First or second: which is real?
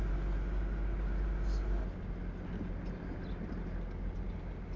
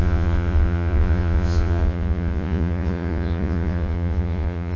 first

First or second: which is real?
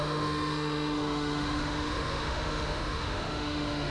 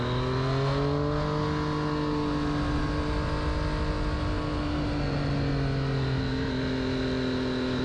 second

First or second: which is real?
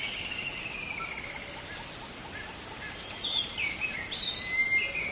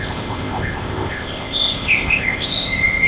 first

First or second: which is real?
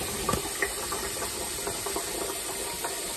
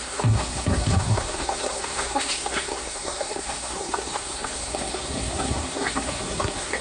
first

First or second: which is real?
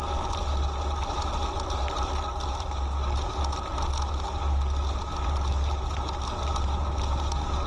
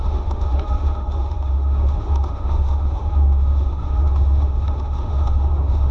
first